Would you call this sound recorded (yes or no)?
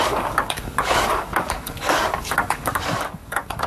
no